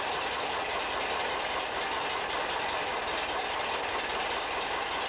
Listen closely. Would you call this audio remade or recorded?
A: recorded